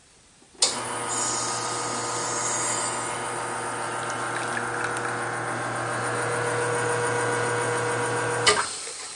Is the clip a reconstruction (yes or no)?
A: no